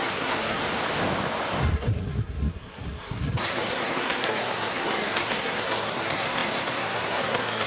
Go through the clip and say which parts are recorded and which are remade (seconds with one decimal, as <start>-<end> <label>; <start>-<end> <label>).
0.0-0.6 remade; 0.6-1.6 recorded; 1.6-7.7 remade